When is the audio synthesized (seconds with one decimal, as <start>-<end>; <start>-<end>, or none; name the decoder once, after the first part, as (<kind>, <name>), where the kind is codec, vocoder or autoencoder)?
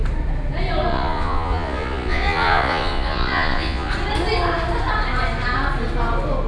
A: 0.9-3.9 (vocoder, Vocos)